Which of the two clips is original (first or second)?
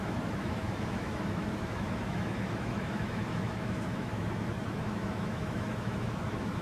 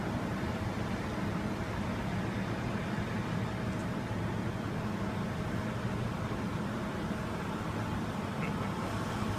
second